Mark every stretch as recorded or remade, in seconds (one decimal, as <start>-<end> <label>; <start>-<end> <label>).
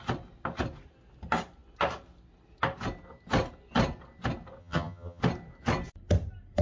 0.0-4.6 recorded; 4.6-5.2 remade; 5.2-6.6 recorded